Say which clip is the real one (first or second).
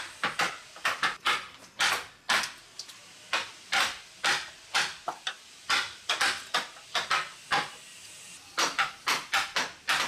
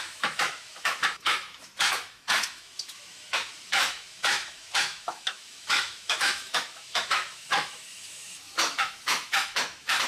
first